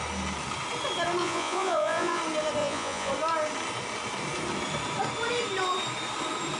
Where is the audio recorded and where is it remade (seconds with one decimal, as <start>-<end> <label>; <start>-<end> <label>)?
0.0-1.2 recorded; 1.2-2.2 remade; 2.2-2.6 recorded; 2.6-3.1 remade; 3.1-6.6 recorded